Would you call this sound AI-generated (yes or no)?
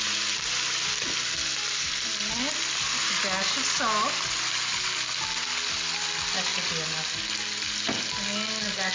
no